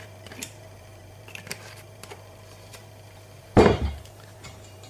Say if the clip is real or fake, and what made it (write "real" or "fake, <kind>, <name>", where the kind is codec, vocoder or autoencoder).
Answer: fake, vocoder, BigVGAN v2